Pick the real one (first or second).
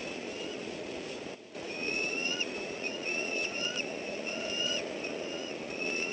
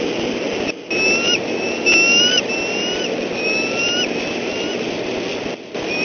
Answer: second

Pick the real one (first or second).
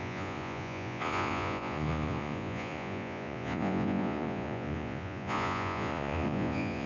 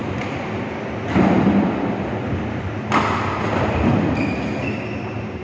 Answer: second